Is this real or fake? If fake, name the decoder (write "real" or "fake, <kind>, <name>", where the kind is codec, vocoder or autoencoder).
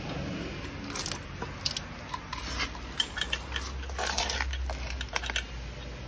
real